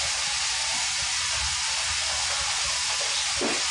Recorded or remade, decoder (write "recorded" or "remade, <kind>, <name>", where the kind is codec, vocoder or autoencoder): recorded